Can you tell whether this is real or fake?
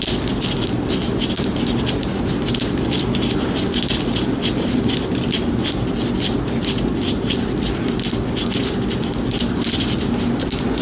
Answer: real